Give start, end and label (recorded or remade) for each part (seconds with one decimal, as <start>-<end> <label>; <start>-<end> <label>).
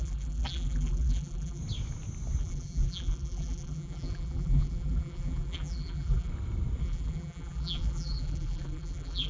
0.0-1.6 remade; 1.6-2.4 recorded; 2.4-6.3 remade; 6.3-6.8 recorded; 6.8-9.3 remade